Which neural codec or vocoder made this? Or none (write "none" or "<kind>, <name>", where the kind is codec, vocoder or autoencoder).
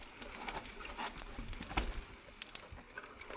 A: none